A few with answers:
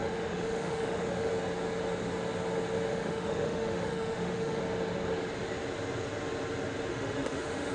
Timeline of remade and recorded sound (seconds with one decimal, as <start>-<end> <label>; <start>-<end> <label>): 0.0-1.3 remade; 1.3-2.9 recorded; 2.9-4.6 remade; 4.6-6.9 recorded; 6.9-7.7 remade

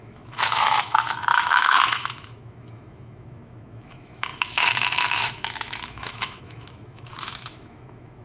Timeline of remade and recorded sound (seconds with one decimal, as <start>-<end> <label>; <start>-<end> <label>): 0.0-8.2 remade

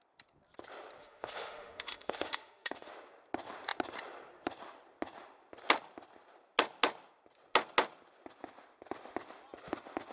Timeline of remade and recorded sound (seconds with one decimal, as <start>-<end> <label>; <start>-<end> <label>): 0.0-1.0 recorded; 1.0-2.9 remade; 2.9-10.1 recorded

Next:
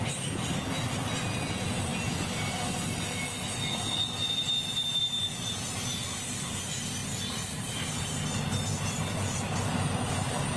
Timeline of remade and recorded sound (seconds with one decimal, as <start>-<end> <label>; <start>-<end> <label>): 0.0-10.6 recorded

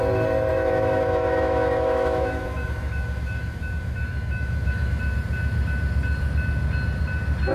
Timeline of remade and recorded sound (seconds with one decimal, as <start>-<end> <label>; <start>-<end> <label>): 0.0-0.5 recorded; 0.5-5.0 remade; 5.0-7.5 recorded